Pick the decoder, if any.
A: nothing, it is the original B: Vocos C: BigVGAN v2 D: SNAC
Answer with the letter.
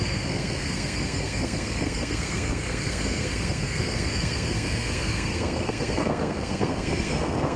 D